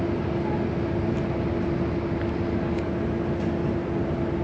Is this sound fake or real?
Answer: real